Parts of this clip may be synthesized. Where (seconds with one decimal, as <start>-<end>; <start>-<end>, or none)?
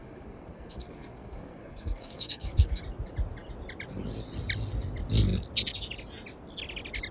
0.0-2.8